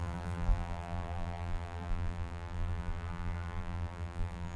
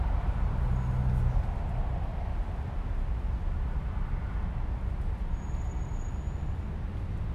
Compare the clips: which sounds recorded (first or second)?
second